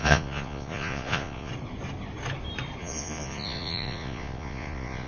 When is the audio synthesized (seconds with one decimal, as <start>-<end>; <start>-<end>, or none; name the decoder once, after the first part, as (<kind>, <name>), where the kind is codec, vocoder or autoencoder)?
0.0-1.5 (vocoder, Vocos); 2.8-5.1